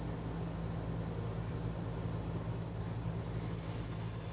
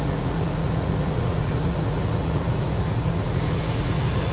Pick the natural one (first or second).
first